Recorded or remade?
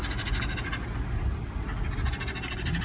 recorded